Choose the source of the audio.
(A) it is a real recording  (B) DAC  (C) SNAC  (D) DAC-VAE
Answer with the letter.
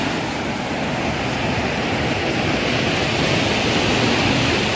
A